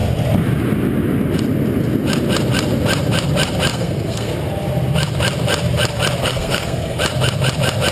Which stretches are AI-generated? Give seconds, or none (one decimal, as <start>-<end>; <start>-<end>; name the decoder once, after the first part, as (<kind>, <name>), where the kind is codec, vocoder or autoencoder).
3.7-4.3 (codec, SNAC); 6.2-7.0